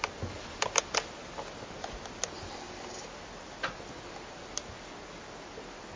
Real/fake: real